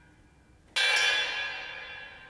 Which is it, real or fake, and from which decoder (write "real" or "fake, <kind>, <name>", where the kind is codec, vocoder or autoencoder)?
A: real